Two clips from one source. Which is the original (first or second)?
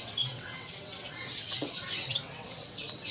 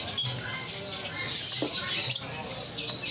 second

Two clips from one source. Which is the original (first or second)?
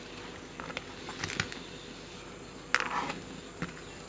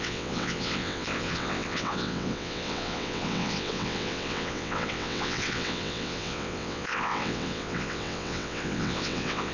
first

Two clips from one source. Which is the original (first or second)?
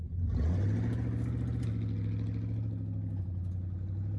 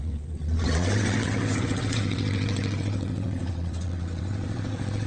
first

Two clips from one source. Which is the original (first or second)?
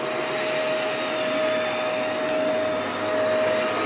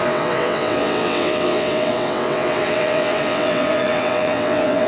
first